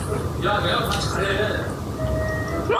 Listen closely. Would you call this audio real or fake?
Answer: real